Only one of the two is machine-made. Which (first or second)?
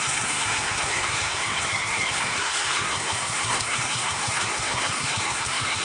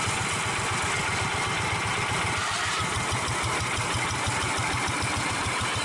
first